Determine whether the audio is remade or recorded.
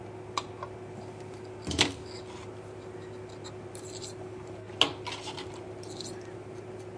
recorded